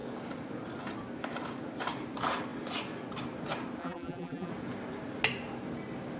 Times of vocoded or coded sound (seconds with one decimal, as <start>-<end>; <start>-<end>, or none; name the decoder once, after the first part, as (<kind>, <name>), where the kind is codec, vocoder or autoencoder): 3.8-4.5 (vocoder, BigVGAN v2)